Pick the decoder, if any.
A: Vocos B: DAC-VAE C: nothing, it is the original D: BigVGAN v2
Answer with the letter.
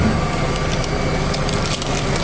C